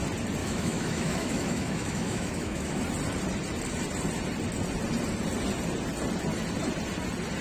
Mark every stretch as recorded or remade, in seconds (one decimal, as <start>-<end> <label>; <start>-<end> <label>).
0.0-0.4 recorded; 0.4-2.8 remade; 2.8-7.4 recorded